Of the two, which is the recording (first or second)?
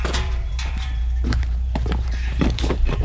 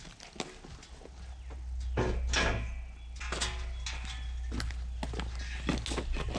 second